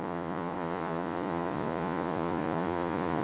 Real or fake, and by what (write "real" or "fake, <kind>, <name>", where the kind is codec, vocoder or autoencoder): fake, vocoder, Vocos